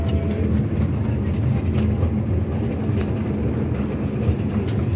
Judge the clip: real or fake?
real